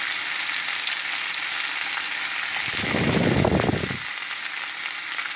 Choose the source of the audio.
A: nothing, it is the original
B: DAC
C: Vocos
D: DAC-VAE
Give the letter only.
A